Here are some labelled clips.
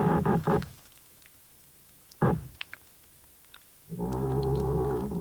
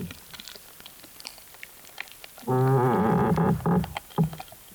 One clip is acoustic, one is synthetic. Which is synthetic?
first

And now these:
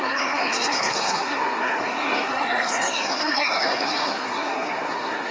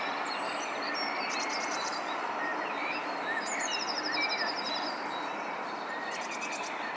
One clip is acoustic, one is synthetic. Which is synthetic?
first